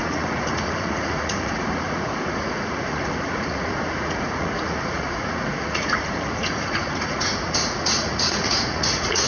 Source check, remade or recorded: remade